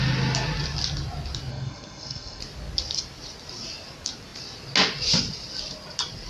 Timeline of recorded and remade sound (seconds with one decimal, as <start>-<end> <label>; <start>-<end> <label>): 0.0-1.5 recorded; 1.5-2.4 remade; 2.4-6.3 recorded

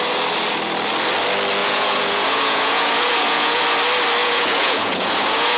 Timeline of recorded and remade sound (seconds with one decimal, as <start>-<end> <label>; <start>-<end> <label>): 0.0-1.6 recorded; 1.6-3.6 remade; 3.6-4.2 recorded; 4.2-5.6 remade

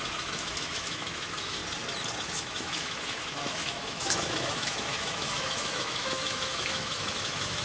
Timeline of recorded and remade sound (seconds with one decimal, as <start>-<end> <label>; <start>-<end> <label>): 0.0-1.6 remade; 1.6-2.2 recorded; 2.2-7.6 remade

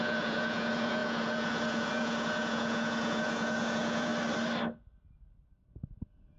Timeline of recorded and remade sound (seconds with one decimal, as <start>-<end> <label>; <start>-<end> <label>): 0.0-4.1 remade; 4.1-5.7 recorded; 5.7-6.4 remade

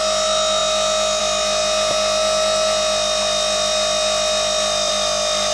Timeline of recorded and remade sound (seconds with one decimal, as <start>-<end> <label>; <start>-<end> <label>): 0.0-5.5 recorded